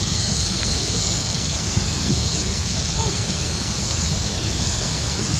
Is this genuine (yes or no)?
no